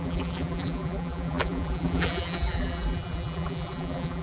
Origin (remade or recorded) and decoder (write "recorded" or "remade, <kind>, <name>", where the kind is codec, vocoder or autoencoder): remade, vocoder, BigVGAN v2